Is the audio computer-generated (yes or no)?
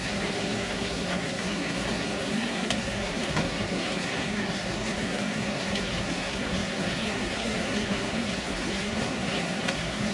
yes